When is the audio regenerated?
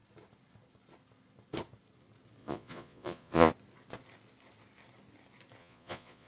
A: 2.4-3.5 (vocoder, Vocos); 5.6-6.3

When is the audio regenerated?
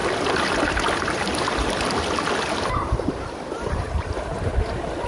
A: 3.1-4.5 (vocoder, BigVGAN v2)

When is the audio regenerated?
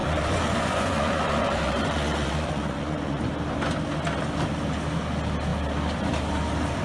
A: 0.0-3.2 (vocoder, Vocos)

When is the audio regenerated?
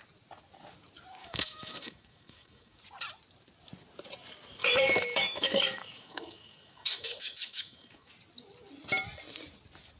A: 1.2-2.8 (autoencoder, DAC-VAE); 4.6-8.1